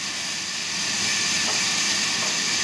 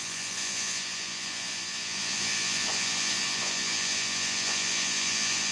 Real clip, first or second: first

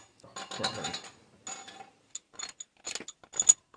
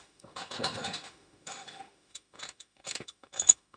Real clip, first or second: first